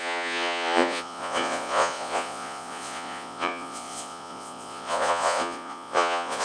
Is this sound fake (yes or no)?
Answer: yes